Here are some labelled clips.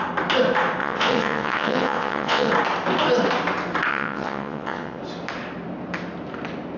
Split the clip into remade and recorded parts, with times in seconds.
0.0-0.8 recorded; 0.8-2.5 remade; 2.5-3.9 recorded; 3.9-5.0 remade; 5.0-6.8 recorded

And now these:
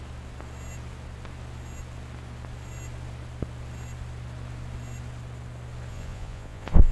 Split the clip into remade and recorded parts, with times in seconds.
0.0-5.9 recorded; 5.9-6.9 remade

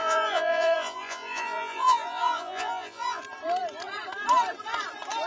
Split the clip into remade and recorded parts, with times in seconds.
0.0-3.2 remade; 3.2-5.3 recorded

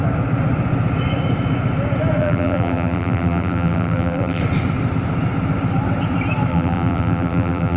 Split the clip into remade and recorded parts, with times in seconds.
0.0-2.2 recorded; 2.2-4.4 remade; 4.4-6.5 recorded; 6.5-7.8 remade

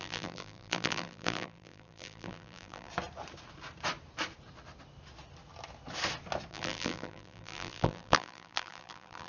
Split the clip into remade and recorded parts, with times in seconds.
0.0-2.9 remade; 2.9-6.5 recorded; 6.5-9.3 remade